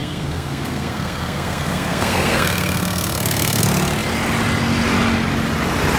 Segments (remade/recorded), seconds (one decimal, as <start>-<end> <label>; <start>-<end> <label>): 0.0-3.6 remade; 3.6-6.0 recorded